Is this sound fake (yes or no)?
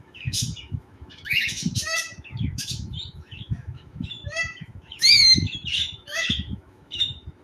yes